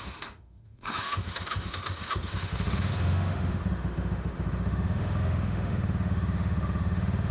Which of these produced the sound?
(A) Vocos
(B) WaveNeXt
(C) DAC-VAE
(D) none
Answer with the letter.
C